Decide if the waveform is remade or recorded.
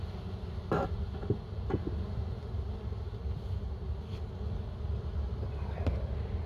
recorded